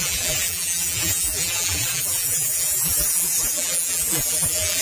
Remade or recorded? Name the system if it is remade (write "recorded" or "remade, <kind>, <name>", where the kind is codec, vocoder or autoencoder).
remade, vocoder, BigVGAN v2